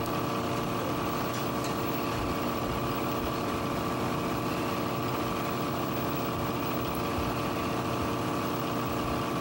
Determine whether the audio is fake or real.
real